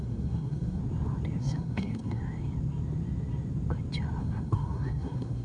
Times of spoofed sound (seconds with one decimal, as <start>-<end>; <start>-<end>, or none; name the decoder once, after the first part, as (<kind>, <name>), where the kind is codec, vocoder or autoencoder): 0.0-0.8 (codec, SNAC); 1.4-2.2; 4.2-5.4